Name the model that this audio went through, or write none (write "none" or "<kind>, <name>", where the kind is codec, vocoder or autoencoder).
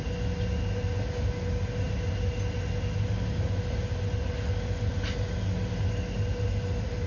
none